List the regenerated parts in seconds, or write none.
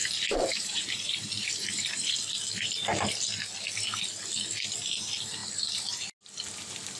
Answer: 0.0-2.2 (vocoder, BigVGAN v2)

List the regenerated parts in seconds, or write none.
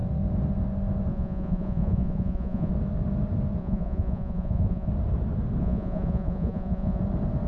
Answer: 1.1-2.7 (vocoder, Vocos); 3.6-4.9; 5.6-7.0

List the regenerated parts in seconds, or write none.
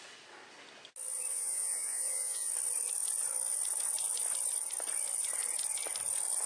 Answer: 1.3-2.5 (vocoder, Vocos)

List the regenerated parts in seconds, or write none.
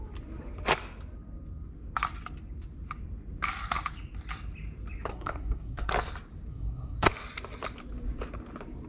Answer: 5.1-5.9 (codec, SNAC); 6.5-7.1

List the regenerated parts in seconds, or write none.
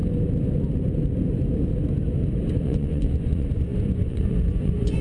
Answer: 2.6-5.0 (vocoder, Vocos)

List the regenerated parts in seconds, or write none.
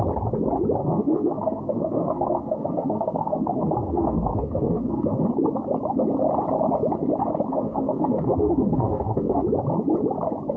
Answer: 0.8-5.3 (codec, SNAC); 7.5-9.4